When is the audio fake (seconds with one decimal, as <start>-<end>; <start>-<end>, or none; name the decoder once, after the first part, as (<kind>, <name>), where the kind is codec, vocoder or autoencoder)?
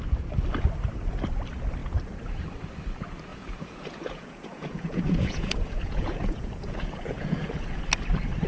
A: 3.3-7.8 (vocoder, Vocos)